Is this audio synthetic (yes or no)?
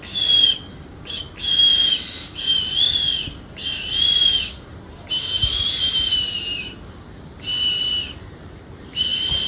no